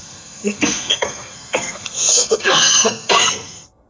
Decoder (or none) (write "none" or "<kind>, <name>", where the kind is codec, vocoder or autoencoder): codec, SNAC